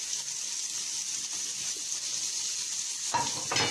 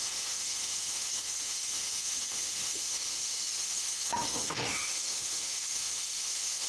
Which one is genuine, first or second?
first